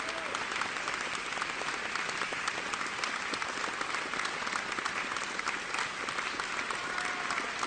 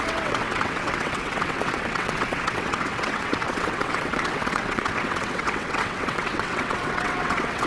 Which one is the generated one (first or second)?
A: second